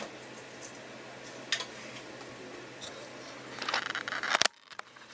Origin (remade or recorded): recorded